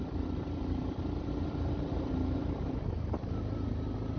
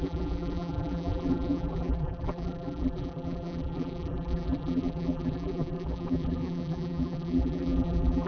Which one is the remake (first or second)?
second